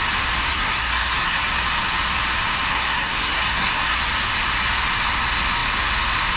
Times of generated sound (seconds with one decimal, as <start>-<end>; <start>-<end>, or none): 0.5-1.5; 2.7-4.0